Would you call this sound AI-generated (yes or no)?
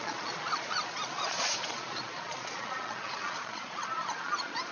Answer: yes